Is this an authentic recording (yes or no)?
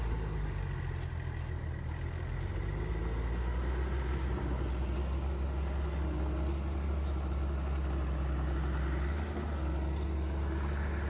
yes